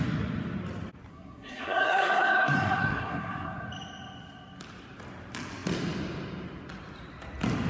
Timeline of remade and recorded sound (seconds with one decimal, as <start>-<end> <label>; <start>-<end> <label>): 0.0-1.1 recorded; 1.1-3.6 remade; 3.6-7.7 recorded